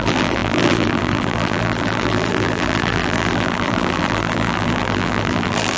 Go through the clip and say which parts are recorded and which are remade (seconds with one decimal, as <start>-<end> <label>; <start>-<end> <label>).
0.0-5.8 remade